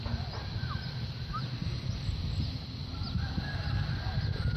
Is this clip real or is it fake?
real